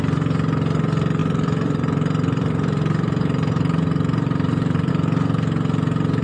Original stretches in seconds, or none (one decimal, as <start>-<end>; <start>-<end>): 0.0-1.2; 4.9-6.2

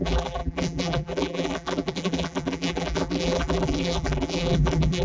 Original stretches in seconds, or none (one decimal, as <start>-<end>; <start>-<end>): none

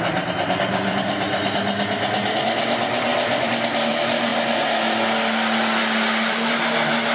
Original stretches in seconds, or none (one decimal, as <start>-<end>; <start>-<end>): 0.0-7.1

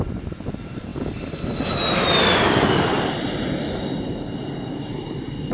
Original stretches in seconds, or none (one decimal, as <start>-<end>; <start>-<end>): 0.0-5.5

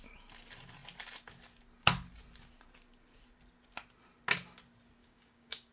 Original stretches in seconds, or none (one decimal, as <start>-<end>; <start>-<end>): 0.0-5.0

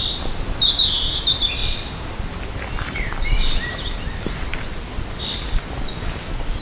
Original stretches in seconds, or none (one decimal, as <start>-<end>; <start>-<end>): 0.0-6.6